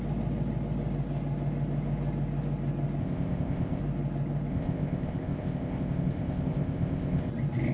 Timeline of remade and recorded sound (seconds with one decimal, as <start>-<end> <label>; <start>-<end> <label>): 0.0-3.0 recorded; 3.0-3.8 remade; 3.8-4.5 recorded; 4.5-7.3 remade; 7.3-7.7 recorded